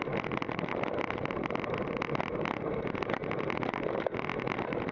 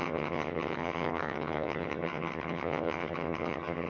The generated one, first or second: second